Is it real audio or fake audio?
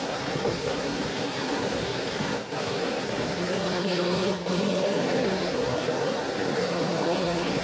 fake